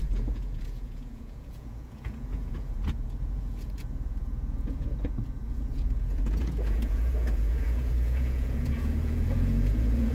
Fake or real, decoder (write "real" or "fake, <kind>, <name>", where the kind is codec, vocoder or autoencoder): fake, vocoder, Vocos